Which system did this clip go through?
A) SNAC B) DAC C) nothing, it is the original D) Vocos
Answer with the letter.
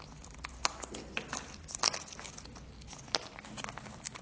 C